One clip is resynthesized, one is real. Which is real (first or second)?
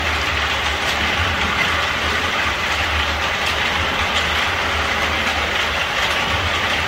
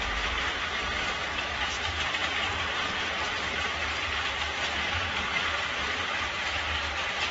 first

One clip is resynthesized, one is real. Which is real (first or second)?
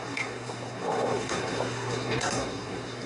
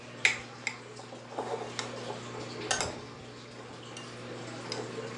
second